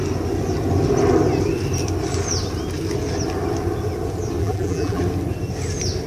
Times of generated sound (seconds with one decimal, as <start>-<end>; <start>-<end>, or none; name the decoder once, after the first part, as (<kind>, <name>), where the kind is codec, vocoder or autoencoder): 4.4-5.0 (vocoder, BigVGAN v2)